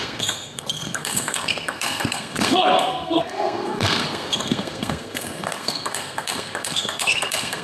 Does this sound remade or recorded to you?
remade